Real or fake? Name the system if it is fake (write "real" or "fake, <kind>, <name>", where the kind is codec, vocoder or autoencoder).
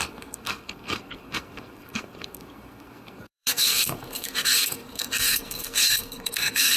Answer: fake, codec, SNAC